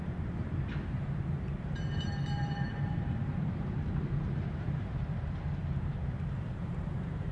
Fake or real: fake